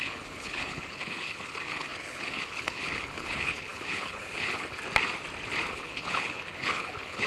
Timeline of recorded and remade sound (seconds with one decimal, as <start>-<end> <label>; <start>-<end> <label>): 0.0-4.8 remade; 4.8-5.7 recorded; 5.7-7.3 remade